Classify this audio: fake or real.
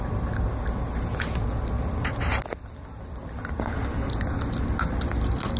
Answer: real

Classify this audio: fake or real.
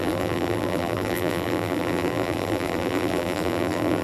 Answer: fake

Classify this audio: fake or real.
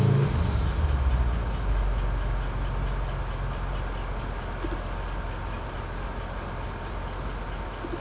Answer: real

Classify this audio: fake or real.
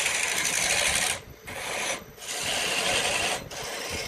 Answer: real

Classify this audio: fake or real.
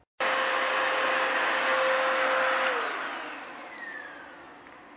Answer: real